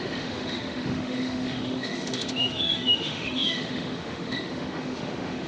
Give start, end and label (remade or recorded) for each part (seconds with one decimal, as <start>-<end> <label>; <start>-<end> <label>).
0.0-5.5 remade